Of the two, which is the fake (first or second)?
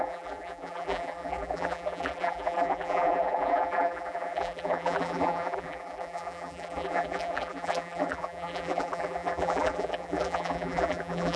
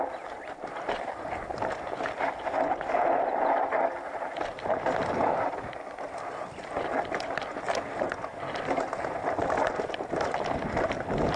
first